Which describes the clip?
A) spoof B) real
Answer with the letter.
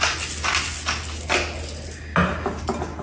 B